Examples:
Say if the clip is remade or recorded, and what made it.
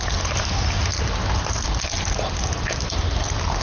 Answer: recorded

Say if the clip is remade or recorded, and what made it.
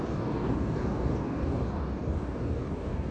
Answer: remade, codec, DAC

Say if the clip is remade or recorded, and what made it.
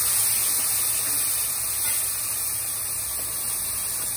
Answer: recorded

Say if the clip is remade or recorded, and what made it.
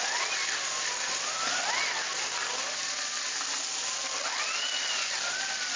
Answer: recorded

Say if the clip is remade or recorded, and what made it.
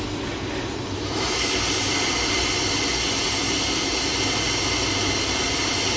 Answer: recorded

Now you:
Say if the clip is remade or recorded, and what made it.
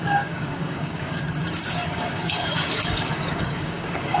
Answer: remade, codec, DAC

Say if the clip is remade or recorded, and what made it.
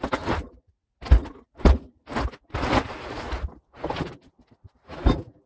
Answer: recorded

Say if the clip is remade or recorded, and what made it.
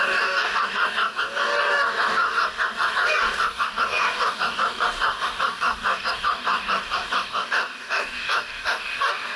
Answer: remade, codec, DAC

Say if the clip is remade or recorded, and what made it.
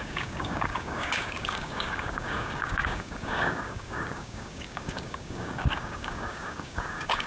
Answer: remade, codec, DAC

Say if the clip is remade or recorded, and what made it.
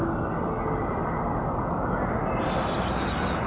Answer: recorded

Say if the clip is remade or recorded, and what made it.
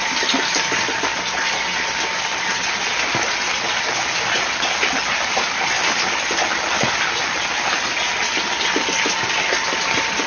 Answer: recorded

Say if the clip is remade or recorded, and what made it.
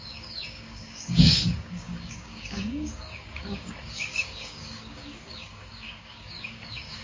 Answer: remade, codec, DAC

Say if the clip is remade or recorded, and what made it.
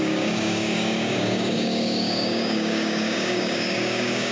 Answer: remade, codec, DAC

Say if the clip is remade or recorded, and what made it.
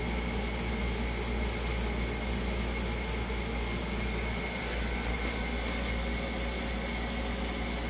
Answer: recorded